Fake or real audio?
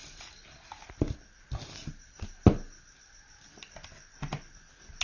real